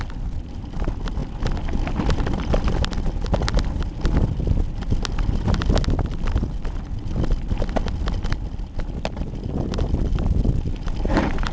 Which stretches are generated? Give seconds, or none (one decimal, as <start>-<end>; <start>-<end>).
none